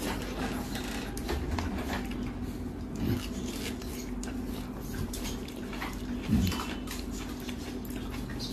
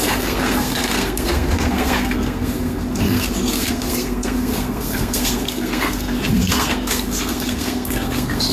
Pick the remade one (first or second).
second